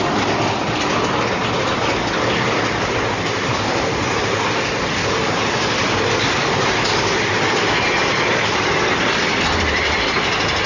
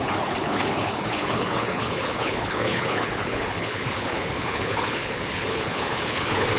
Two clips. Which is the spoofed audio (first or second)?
second